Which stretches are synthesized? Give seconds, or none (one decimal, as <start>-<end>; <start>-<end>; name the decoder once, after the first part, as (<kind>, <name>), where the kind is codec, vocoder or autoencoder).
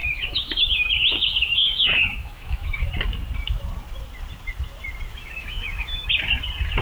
0.0-2.9 (autoencoder, DAC-VAE); 5.1-6.1